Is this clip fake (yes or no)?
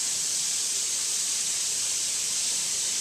yes